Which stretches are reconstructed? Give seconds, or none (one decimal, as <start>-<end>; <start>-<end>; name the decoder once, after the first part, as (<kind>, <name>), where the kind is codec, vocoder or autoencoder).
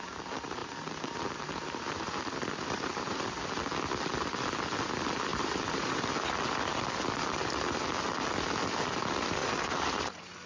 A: 0.6-3.4 (vocoder, BigVGAN v2); 5.3-6.1; 9.4-10.5